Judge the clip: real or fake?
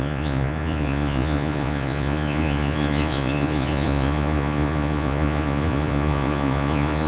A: fake